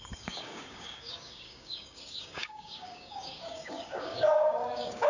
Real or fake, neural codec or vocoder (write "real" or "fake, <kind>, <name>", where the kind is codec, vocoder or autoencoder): fake, codec, DAC